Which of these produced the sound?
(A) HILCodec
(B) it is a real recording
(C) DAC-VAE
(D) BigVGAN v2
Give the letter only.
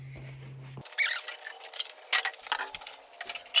B